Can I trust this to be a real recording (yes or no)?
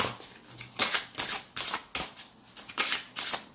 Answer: yes